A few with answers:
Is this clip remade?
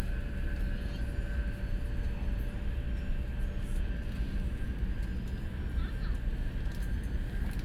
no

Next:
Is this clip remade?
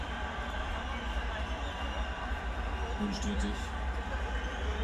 no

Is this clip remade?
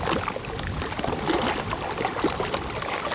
no